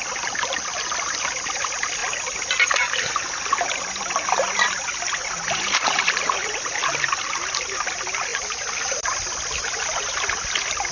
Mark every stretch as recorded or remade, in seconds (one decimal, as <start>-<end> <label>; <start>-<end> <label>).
0.0-2.0 remade; 2.0-4.0 recorded; 4.0-6.8 remade; 6.8-7.9 recorded; 7.9-10.9 remade